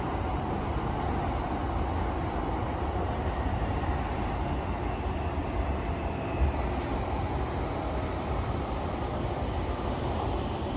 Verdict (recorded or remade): recorded